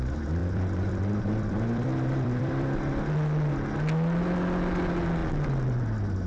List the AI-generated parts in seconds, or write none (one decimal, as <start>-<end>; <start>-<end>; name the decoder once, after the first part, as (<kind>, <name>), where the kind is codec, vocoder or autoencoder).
0.4-3.0 (vocoder, BigVGAN v2)